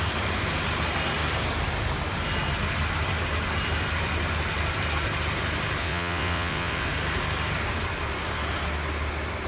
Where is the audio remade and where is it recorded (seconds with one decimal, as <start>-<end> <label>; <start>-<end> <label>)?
0.0-5.8 recorded; 5.8-6.9 remade; 6.9-9.5 recorded